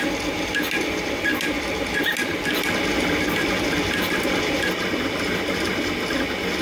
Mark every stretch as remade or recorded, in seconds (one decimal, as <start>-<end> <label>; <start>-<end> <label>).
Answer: 0.0-6.6 recorded